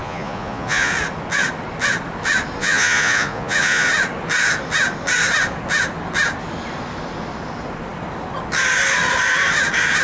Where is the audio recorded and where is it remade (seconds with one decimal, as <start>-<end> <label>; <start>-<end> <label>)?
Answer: 0.0-0.9 remade; 0.9-2.6 recorded; 2.6-3.9 remade; 3.9-10.0 recorded